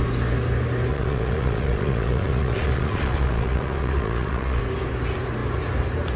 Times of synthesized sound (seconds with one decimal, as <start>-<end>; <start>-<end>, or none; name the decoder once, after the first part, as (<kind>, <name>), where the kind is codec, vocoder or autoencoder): 0.9-4.6 (vocoder, Vocos)